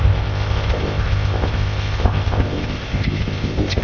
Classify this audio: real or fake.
fake